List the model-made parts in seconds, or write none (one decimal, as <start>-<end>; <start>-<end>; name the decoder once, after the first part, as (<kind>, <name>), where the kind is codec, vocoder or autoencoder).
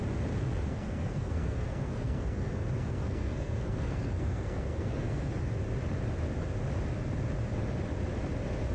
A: 0.7-5.3 (codec, SNAC)